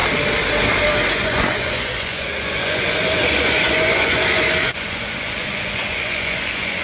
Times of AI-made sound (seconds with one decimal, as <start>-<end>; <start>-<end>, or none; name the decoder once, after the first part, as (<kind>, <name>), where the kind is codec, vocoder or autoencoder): 1.1-6.8 (vocoder, Vocos)